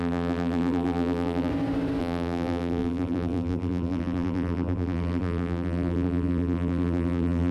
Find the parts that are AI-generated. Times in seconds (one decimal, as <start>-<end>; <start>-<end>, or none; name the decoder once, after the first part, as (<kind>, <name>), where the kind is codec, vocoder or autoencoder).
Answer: 0.0-1.5 (vocoder, BigVGAN v2); 2.0-7.5